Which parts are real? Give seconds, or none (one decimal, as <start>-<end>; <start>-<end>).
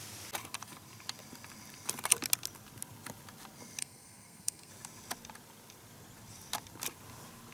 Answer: 0.0-3.8; 4.7-7.5